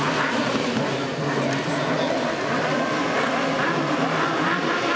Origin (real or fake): real